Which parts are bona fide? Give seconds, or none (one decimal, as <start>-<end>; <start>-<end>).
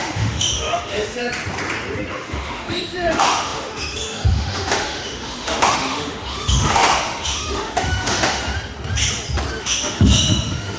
1.3-2.1; 8.4-9.6